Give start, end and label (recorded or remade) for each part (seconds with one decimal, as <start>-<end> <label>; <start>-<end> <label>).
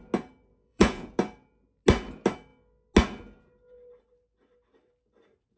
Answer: 0.0-0.5 recorded; 0.5-1.1 remade; 1.1-5.6 recorded